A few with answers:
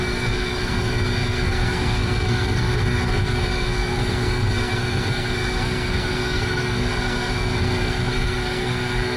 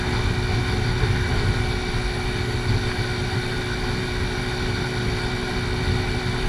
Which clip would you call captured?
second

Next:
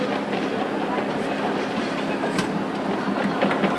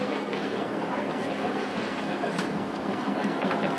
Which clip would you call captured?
first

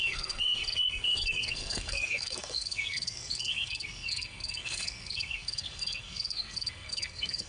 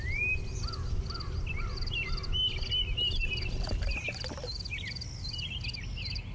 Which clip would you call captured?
second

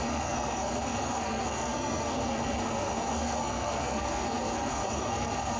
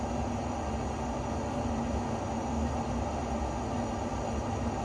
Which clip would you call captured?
second